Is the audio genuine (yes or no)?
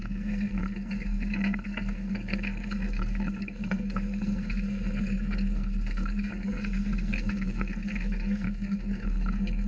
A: no